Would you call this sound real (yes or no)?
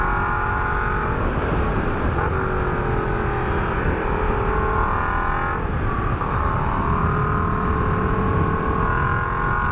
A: yes